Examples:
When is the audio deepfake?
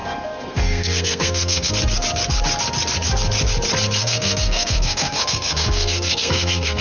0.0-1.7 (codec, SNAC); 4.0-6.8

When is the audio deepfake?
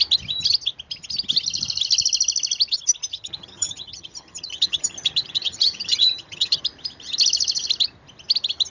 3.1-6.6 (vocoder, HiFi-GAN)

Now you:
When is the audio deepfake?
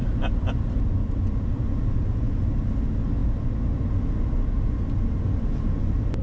none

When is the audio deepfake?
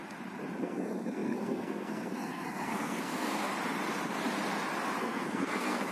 0.6-3.5 (codec, SNAC); 5.0-5.9